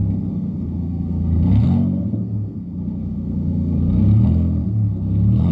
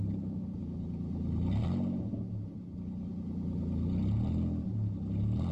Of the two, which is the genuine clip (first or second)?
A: second